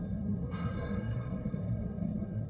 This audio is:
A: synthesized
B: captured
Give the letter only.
A